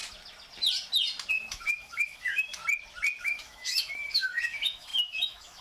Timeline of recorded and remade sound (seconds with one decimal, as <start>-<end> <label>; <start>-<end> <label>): 0.0-1.3 recorded; 1.3-2.6 remade; 2.6-3.2 recorded; 3.2-5.6 remade